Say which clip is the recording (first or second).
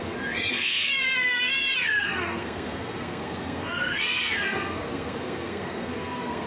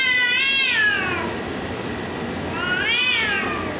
second